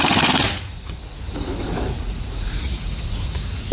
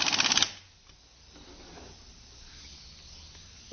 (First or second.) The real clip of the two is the second